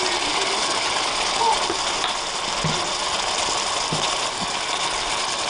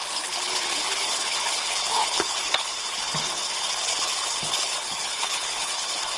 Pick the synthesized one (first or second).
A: second